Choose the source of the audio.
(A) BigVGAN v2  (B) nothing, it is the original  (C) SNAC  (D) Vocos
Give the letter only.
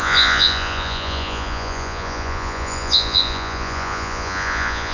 D